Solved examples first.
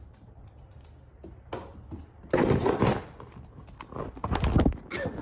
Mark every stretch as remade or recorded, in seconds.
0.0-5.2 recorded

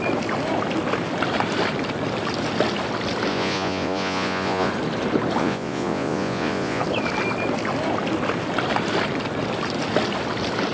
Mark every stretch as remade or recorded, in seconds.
0.0-3.3 recorded; 3.3-4.7 remade; 4.7-5.4 recorded; 5.4-6.8 remade; 6.8-10.7 recorded

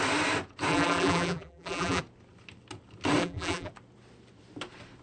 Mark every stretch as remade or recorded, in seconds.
0.0-0.7 recorded; 0.7-2.0 remade; 2.0-3.2 recorded; 3.2-3.7 remade; 3.7-5.0 recorded

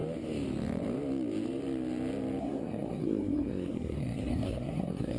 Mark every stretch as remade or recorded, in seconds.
0.0-2.4 recorded; 2.4-5.2 remade

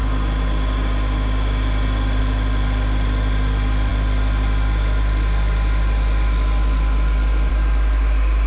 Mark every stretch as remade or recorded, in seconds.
0.0-8.5 recorded